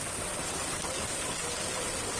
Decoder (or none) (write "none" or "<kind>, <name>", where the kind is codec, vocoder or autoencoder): none